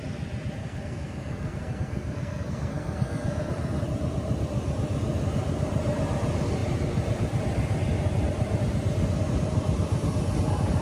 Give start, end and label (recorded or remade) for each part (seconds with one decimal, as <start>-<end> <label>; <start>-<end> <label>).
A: 0.0-0.6 recorded; 0.6-3.5 remade; 3.5-10.8 recorded